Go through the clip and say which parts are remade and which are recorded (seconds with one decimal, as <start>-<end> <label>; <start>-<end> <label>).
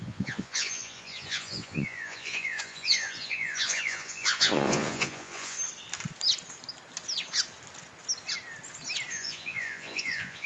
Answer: 0.0-5.6 remade; 5.6-9.1 recorded; 9.1-10.5 remade